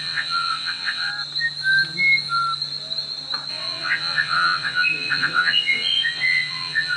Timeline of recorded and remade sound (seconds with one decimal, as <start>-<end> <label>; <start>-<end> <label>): 0.0-1.1 remade; 1.1-3.5 recorded; 3.5-7.0 remade